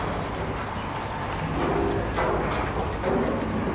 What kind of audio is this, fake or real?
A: real